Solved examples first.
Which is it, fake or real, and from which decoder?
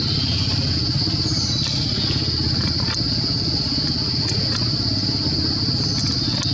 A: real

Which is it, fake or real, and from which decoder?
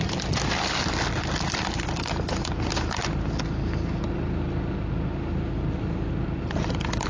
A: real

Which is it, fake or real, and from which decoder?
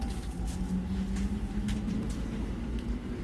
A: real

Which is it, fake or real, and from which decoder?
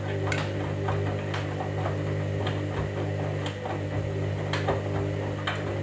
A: real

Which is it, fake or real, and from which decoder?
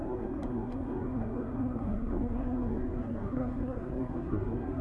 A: fake, codec, SNAC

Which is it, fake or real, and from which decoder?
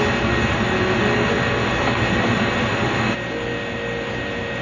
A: real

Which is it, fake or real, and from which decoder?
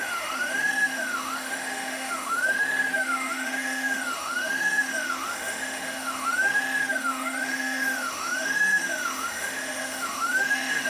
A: fake, autoencoder, DAC-VAE